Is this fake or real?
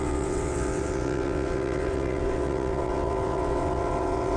fake